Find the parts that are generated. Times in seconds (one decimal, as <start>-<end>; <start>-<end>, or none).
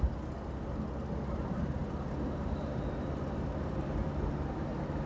1.3-5.1